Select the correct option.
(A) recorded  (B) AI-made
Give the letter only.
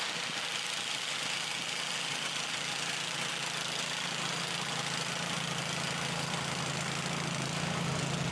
A